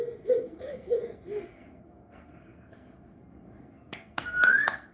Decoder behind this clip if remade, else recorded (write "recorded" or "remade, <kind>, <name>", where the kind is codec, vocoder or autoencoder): remade, codec, SNAC